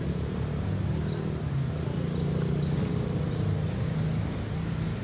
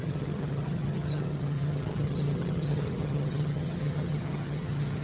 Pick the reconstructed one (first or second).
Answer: second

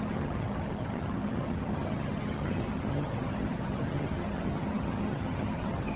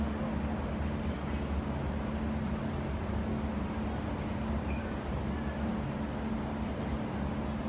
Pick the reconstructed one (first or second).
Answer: first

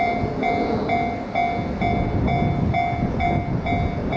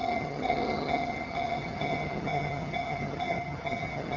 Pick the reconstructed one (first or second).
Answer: second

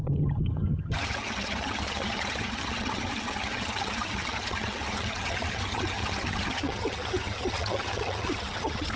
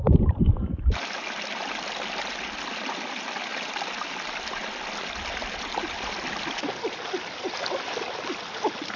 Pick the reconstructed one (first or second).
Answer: first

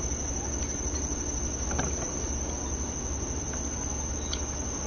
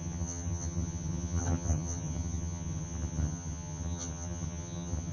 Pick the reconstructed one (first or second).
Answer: second